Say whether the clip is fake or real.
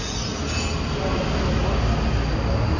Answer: real